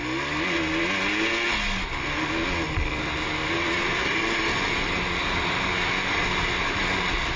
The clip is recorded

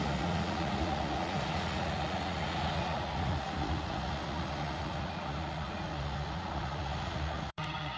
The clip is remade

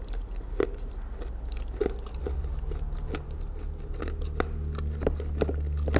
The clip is recorded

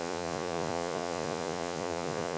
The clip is remade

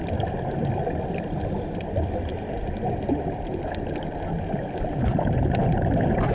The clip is recorded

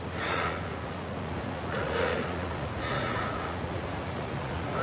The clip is remade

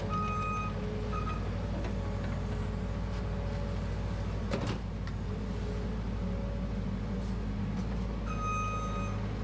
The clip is recorded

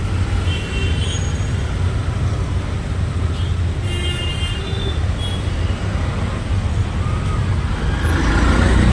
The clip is recorded